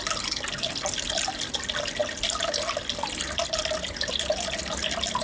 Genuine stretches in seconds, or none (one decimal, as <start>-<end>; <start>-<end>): 0.0-5.2